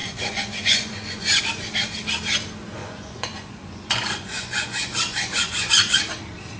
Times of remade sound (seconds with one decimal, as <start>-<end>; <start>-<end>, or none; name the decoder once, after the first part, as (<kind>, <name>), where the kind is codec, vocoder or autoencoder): 0.0-1.4 (vocoder, Vocos); 2.8-5.7